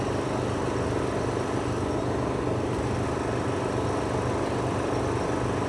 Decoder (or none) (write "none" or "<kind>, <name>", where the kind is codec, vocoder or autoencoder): none